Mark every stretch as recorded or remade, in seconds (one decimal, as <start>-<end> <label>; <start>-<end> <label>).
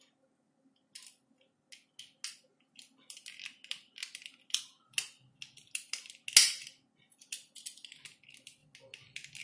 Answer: 0.0-9.4 recorded